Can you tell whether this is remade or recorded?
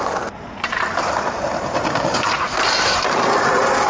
remade